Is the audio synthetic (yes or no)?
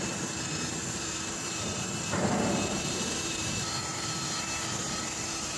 yes